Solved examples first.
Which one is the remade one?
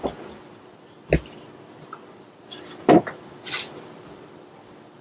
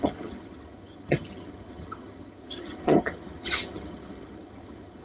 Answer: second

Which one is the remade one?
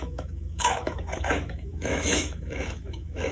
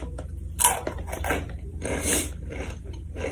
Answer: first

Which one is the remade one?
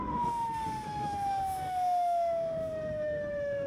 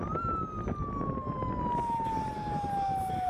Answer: first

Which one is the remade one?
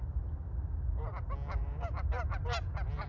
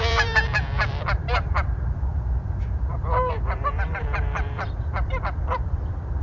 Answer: second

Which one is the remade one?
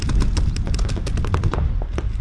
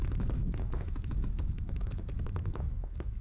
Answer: second